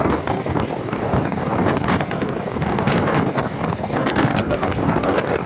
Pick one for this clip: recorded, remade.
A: remade